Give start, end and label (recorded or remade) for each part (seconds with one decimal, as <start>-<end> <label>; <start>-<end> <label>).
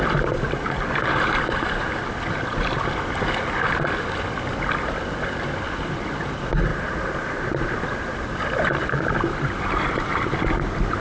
0.0-11.0 recorded